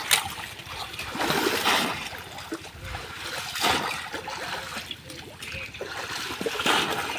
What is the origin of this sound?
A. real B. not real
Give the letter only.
A